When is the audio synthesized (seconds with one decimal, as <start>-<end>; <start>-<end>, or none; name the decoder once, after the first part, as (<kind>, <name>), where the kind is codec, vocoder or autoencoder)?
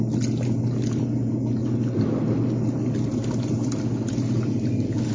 none